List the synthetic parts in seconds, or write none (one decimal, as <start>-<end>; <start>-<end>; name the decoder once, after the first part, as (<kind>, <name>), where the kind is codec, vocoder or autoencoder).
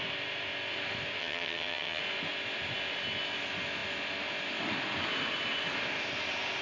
1.2-2.0 (vocoder, HiFi-GAN)